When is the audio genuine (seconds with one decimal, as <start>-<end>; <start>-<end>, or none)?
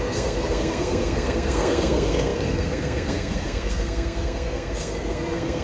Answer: none